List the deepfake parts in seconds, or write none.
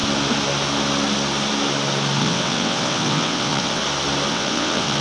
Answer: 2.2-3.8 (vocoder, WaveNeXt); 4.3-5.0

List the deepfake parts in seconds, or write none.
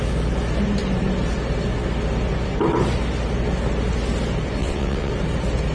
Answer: 4.6-5.1 (vocoder, WaveNeXt)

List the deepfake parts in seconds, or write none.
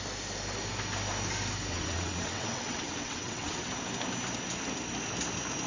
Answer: 1.7-3.7 (vocoder, WaveNeXt)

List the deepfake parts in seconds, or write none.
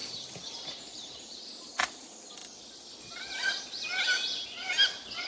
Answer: none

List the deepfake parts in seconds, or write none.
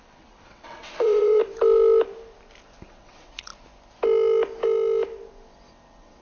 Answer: 0.0-1.4 (vocoder, WaveNeXt); 2.9-3.5; 5.7-6.2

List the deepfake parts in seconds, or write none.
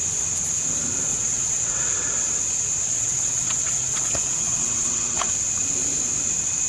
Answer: 1.1-2.3 (vocoder, WaveNeXt); 2.9-5.3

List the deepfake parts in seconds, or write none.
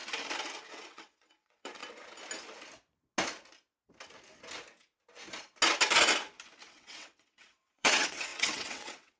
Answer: 0.7-1.8 (vocoder, WaveNeXt); 6.7-9.2